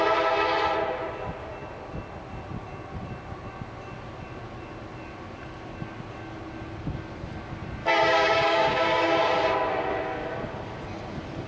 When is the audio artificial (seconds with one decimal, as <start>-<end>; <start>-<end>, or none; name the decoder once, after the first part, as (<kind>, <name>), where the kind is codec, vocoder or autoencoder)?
7.8-9.3 (codec, DAC)